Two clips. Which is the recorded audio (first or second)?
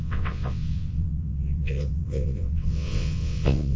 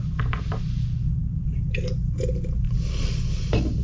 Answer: second